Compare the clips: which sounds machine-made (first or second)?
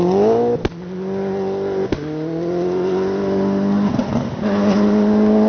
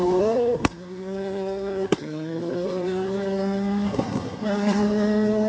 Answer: second